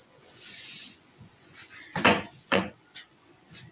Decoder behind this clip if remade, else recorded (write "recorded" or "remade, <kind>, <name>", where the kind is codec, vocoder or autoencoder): remade, vocoder, Vocos